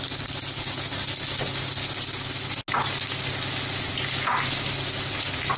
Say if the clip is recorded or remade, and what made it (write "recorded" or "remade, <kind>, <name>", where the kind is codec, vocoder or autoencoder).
recorded